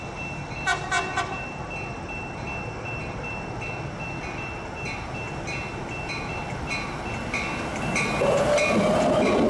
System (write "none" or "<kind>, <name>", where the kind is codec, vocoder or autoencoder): none